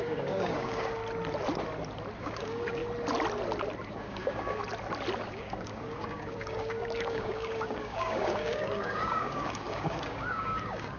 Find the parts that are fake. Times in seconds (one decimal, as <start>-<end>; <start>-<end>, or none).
0.0-1.0; 2.2-2.8; 3.9-4.6; 5.2-11.0